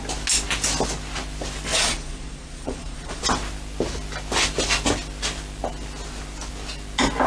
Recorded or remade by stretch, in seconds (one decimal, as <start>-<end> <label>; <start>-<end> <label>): 0.0-1.7 recorded; 1.7-3.2 remade; 3.2-7.3 recorded